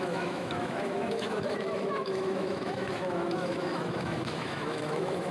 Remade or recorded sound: remade